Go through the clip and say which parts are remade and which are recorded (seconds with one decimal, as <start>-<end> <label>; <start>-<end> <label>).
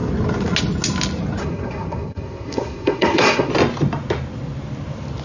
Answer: 0.0-1.4 recorded; 1.4-3.5 remade; 3.5-5.2 recorded